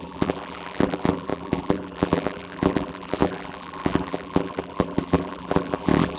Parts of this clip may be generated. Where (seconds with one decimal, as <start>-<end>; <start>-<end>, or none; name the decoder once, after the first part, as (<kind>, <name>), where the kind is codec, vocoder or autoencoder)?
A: 0.0-6.2 (vocoder, BigVGAN v2)